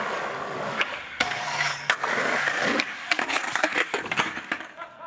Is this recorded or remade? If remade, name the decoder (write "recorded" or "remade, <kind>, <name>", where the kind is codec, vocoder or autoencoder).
remade, codec, DAC